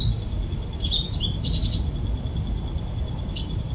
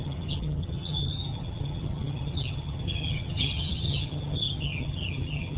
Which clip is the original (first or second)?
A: first